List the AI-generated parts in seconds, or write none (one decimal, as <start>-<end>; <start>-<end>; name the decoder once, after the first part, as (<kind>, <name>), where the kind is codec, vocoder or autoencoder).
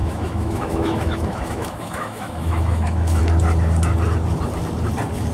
0.0-3.2 (autoencoder, DAC-VAE)